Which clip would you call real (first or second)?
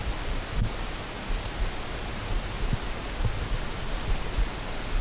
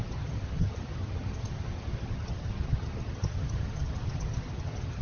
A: first